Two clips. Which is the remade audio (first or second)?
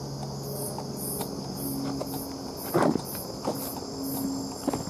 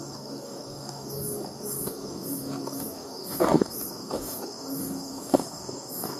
second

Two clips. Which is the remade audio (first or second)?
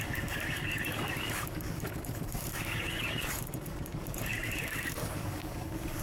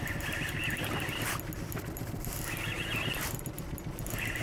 first